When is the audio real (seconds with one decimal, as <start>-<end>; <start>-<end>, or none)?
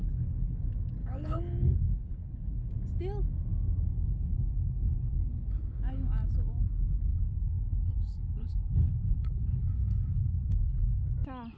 0.6-1.0; 2.7-3.9; 5.3-7.1; 11.1-11.6